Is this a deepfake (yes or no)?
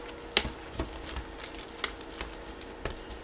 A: no